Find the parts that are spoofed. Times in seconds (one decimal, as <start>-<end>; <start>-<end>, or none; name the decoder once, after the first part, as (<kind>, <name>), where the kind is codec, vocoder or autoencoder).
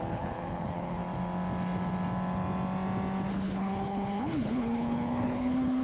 0.0-1.0 (codec, HILCodec); 3.3-5.8